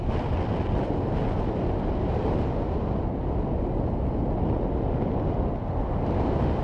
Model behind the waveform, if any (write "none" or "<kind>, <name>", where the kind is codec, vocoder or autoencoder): none